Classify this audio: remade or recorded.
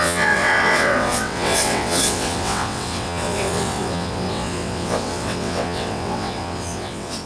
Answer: remade